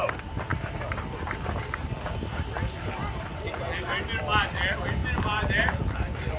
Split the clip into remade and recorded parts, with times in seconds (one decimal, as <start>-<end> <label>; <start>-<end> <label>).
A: 0.0-6.4 recorded